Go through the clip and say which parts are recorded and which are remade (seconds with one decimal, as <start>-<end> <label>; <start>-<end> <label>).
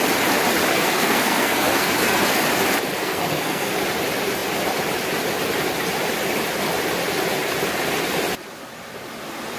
0.0-0.7 recorded; 0.7-2.4 remade; 2.4-3.0 recorded; 3.0-3.7 remade; 3.7-9.6 recorded